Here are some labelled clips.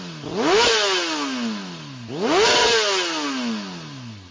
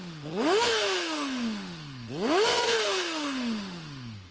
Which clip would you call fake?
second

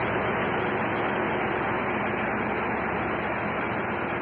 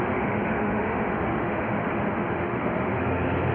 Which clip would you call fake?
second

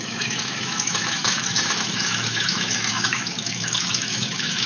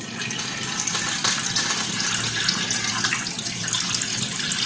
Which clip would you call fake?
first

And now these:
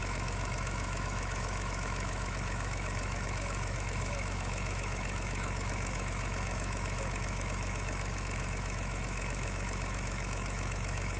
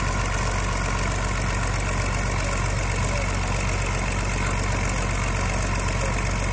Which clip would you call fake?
first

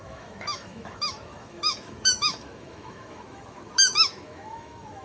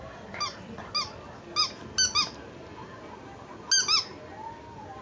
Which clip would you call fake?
first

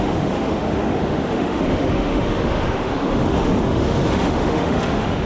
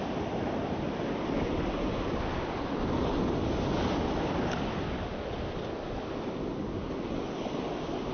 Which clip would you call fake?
first